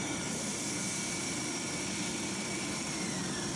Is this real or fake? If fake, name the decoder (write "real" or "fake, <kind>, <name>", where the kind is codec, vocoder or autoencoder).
real